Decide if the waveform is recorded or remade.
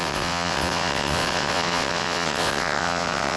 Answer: remade